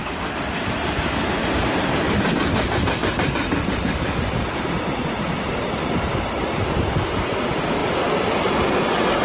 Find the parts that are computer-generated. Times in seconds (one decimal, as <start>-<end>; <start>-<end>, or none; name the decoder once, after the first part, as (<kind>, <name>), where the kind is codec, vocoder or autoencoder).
none